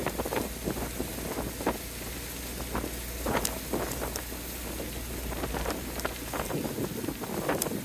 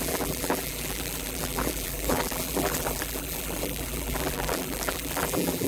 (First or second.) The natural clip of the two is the first